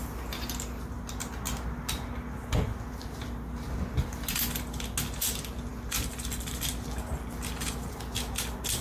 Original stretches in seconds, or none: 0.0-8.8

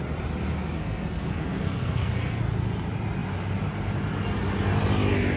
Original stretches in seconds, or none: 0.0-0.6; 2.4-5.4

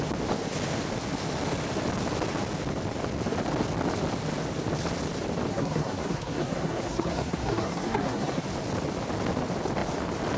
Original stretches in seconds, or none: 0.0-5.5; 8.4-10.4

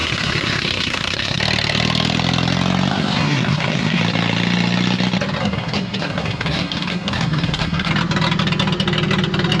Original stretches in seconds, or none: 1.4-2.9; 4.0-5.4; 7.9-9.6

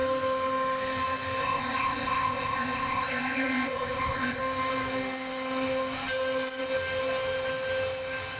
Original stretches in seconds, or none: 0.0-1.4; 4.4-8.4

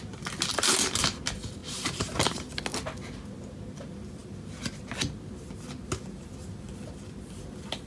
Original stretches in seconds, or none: 0.0-0.5; 1.2-1.6; 2.4-7.9

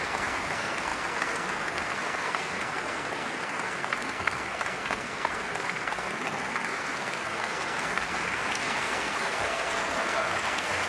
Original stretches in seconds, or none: none